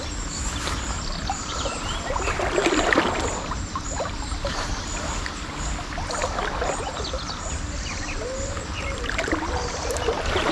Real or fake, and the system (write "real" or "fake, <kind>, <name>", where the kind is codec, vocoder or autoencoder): real